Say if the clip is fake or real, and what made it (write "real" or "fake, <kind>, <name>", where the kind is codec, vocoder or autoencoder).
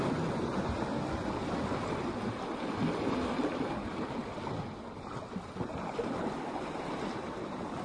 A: real